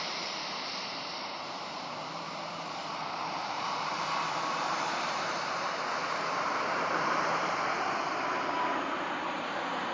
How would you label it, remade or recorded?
remade